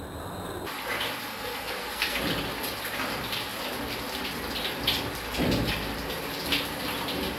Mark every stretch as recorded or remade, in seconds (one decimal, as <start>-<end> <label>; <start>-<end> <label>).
0.0-1.3 recorded; 1.3-2.2 remade; 2.2-7.4 recorded

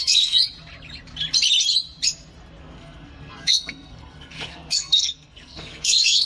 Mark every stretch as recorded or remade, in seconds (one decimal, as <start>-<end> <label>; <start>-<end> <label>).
0.0-0.4 remade; 0.4-2.6 recorded; 2.6-6.3 remade

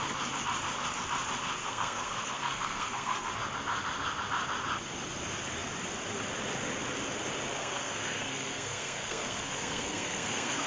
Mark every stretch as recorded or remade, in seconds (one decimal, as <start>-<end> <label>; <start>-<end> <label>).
0.0-1.6 recorded; 1.6-3.3 remade; 3.3-7.6 recorded; 7.6-10.7 remade

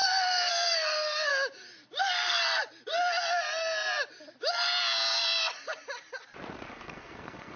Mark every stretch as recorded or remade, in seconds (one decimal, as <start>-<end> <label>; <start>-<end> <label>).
0.0-1.3 remade; 1.3-2.0 recorded; 2.0-2.4 remade; 2.4-6.7 recorded; 6.7-7.6 remade

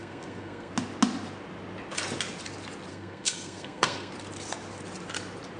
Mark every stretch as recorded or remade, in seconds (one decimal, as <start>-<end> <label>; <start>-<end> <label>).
0.0-0.7 remade; 0.7-2.9 recorded; 2.9-4.1 remade; 4.1-5.6 recorded